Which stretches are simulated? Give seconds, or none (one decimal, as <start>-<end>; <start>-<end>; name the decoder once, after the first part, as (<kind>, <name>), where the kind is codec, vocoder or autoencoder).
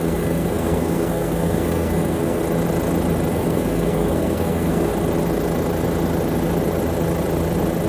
0.0-2.4 (codec, SNAC); 3.3-4.9